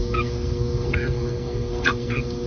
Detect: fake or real fake